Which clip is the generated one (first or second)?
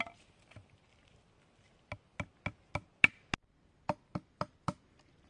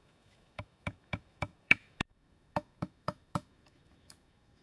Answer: second